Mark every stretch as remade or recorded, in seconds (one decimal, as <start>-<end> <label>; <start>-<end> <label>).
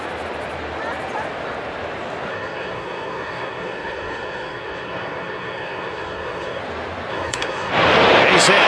0.0-2.3 recorded; 2.3-6.6 remade; 6.6-7.1 recorded; 7.1-7.7 remade; 7.7-8.7 recorded